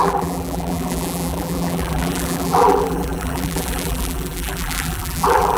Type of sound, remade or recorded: remade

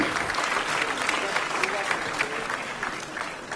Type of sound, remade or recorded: recorded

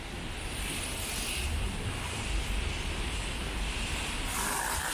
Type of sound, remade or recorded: recorded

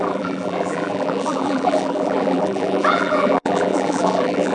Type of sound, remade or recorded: remade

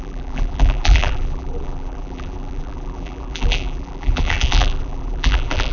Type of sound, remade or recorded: remade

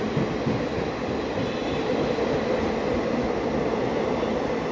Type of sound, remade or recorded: recorded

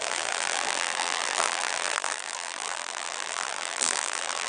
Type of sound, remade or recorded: remade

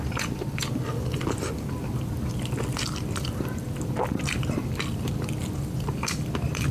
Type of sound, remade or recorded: remade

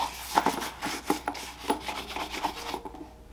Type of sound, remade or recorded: recorded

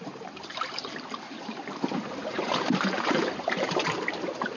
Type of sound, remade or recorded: remade